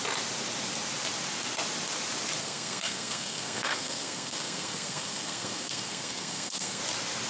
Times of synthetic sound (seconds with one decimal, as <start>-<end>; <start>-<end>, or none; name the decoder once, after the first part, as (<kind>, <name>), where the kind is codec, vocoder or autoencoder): 2.4-6.8 (codec, SNAC)

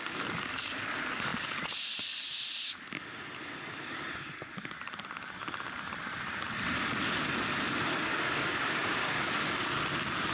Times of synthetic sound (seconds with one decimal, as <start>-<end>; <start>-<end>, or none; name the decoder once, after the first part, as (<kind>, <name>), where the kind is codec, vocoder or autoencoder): 8.1-9.1 (codec, DAC)

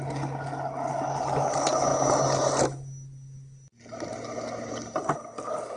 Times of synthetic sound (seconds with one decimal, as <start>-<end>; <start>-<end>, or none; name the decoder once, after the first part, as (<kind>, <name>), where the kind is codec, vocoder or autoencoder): none

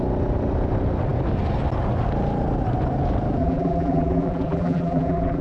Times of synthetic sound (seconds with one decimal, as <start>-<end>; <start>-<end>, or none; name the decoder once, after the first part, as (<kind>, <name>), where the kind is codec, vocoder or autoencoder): 3.4-5.4 (vocoder, BigVGAN v2)